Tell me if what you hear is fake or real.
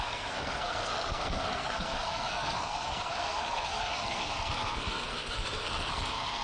fake